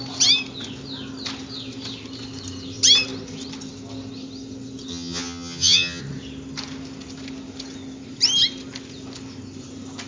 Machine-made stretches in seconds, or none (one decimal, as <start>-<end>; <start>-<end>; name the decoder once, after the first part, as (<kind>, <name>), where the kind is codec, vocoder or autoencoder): 4.9-6.0 (vocoder, HiFi-GAN)